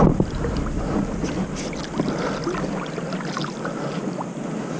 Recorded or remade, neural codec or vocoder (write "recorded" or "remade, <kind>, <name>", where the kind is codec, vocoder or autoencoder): recorded